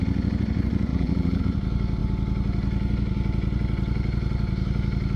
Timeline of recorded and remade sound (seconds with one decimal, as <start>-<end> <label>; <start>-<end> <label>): 0.0-0.9 recorded; 0.9-1.4 remade; 1.4-5.2 recorded